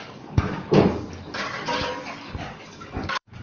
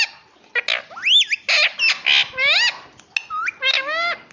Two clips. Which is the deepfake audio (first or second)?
first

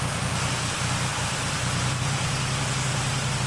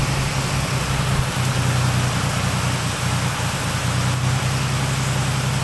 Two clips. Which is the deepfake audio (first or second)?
first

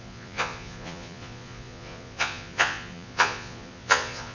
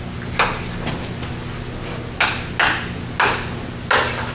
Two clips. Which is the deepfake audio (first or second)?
first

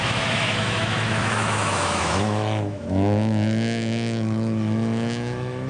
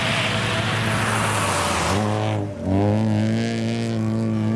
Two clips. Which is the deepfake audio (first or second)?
first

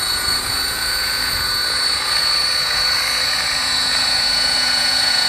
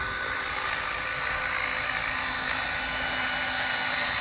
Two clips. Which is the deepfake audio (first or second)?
first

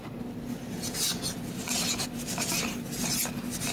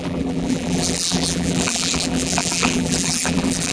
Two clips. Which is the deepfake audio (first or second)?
second